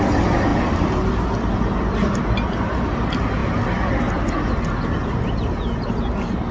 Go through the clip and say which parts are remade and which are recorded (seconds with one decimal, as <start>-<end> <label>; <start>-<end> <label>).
0.0-6.5 recorded